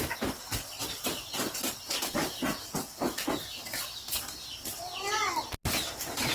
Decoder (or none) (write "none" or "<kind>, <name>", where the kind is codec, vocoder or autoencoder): none